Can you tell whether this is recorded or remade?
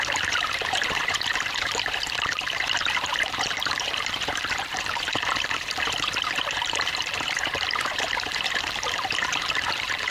remade